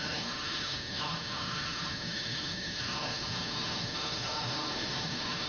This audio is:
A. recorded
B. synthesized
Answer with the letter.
B